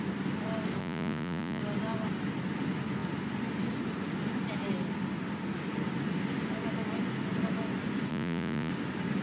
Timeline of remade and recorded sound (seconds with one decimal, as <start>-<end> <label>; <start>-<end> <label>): 0.0-0.8 recorded; 0.8-1.6 remade; 1.6-8.1 recorded; 8.1-8.7 remade; 8.7-9.2 recorded